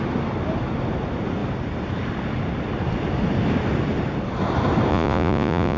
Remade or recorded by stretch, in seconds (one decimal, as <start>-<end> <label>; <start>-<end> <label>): 0.0-4.9 recorded; 4.9-5.8 remade